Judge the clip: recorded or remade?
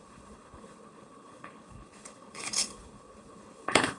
remade